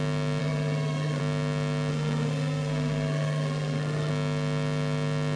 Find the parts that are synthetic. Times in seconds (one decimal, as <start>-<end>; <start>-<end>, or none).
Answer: 0.4-1.2; 1.9-4.1